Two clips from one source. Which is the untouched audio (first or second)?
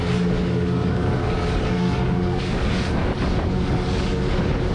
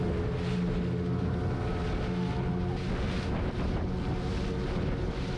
second